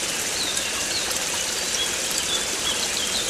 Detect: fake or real real